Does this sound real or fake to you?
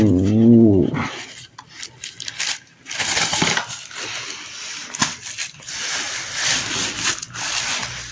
real